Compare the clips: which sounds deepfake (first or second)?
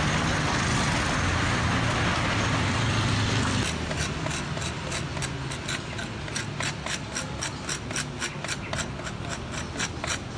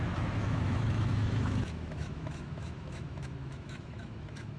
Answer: second